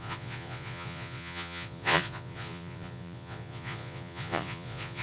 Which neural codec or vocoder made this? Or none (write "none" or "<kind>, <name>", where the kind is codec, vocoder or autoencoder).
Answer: vocoder, Vocos